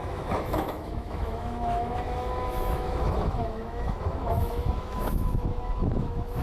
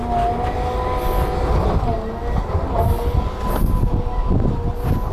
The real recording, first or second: second